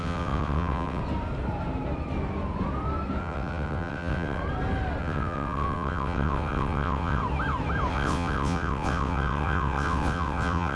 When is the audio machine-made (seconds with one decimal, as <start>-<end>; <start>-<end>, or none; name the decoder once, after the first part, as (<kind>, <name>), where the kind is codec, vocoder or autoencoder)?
0.0-1.0 (vocoder, WaveNeXt); 3.2-4.4; 5.0-7.2; 7.9-10.8